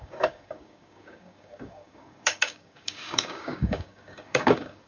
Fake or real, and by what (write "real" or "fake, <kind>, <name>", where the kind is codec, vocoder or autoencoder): fake, codec, DAC